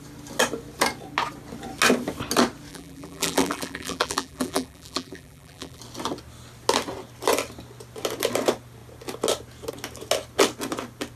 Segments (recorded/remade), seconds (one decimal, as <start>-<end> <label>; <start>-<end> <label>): 0.0-2.7 recorded; 2.7-5.8 remade; 5.8-11.2 recorded